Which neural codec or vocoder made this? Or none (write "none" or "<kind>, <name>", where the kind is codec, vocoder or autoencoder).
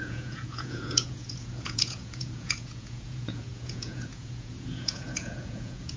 vocoder, Vocos